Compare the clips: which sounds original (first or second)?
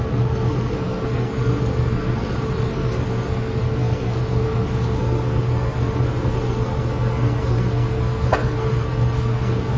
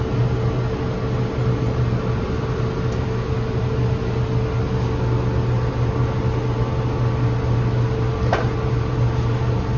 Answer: second